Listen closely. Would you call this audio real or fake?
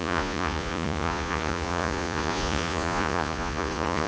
fake